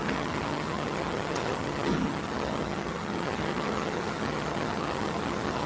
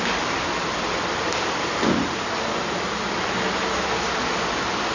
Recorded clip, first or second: second